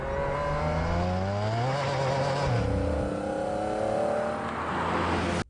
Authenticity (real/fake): real